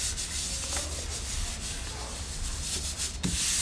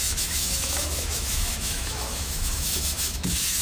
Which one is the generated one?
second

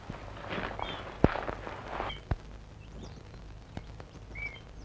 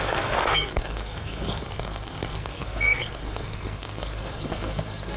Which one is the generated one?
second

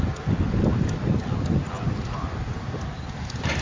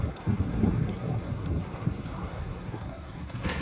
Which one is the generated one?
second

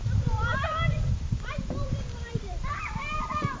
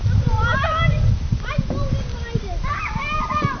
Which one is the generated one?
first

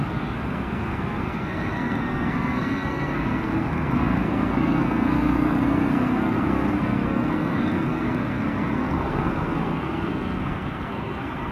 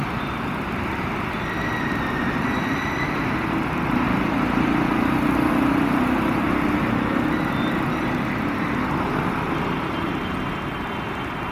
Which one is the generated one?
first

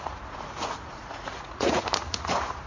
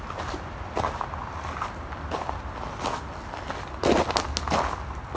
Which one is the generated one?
first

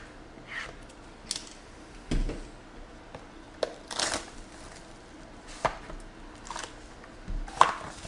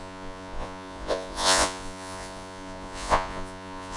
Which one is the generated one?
second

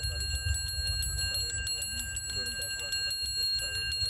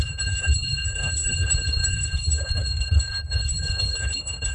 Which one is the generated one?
second